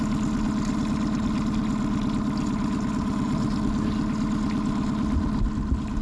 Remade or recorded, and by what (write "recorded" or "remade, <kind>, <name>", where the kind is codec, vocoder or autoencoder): recorded